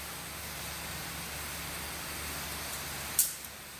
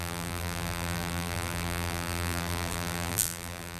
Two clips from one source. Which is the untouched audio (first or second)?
first